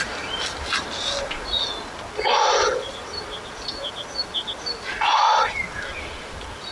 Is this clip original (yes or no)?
yes